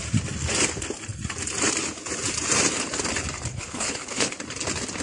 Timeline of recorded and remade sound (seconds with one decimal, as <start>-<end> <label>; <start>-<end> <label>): 0.0-3.5 recorded; 3.5-4.3 remade; 4.3-5.0 recorded